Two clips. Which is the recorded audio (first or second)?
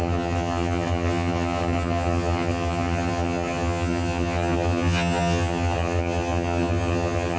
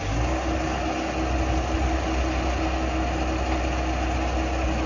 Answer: second